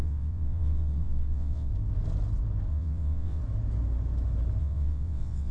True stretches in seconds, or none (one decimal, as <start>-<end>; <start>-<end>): 1.7-2.7; 3.4-4.6